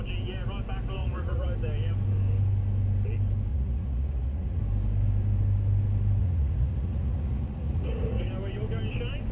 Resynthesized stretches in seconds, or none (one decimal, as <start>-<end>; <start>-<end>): 1.0-1.5; 3.5-4.6; 6.2-8.2